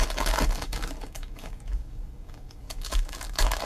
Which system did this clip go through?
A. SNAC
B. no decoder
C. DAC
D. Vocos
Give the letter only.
C